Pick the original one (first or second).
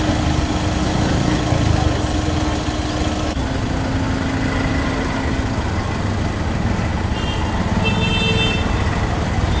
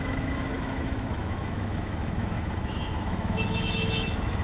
first